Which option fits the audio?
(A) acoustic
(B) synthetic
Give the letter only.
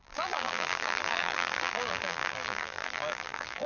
B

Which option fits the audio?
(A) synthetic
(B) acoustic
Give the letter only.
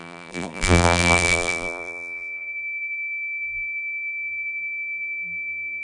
A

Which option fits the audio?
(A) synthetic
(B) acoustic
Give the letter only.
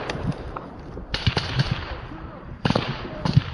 A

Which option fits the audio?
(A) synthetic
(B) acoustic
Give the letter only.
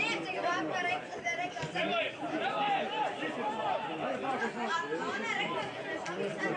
A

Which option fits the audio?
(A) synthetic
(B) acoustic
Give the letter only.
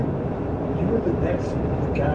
A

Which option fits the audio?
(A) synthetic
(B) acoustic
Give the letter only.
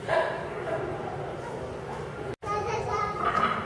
B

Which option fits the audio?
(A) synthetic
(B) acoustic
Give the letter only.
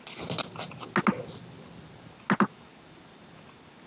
B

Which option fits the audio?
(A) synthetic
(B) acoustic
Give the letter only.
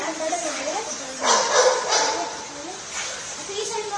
A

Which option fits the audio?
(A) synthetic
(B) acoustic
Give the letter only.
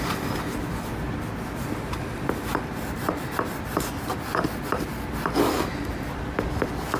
B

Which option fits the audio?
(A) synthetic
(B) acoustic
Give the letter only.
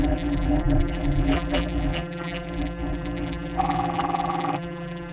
A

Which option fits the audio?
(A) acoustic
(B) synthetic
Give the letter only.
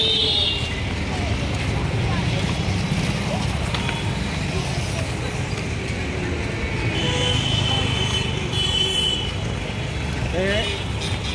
A